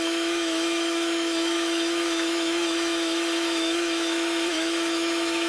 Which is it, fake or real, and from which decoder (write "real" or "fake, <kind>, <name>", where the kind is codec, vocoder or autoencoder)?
fake, autoencoder, DAC-VAE